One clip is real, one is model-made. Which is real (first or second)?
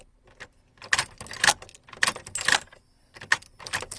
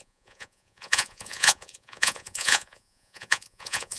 first